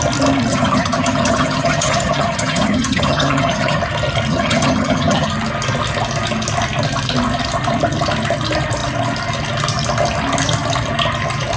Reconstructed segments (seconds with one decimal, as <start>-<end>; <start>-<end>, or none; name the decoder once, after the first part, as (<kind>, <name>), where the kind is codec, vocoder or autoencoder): 0.5-3.8 (vocoder, HiFi-GAN); 4.3-5.3